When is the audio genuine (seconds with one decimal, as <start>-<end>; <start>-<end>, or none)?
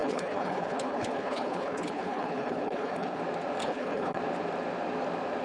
3.2-3.6; 4.2-5.4